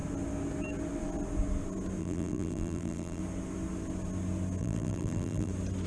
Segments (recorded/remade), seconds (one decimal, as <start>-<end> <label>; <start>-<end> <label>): 0.0-2.0 recorded; 2.0-3.2 remade; 3.2-4.6 recorded; 4.6-5.5 remade; 5.5-5.9 recorded